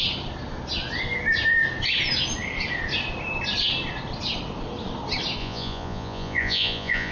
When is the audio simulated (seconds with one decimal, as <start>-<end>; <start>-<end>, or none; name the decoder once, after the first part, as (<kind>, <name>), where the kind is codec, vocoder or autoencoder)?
5.4-7.1 (vocoder, Vocos)